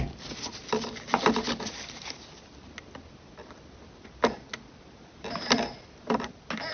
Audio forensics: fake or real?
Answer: real